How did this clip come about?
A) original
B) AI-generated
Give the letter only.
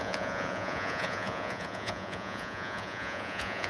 B